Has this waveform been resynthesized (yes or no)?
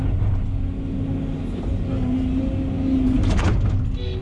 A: no